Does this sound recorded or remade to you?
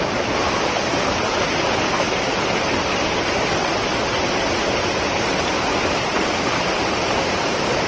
recorded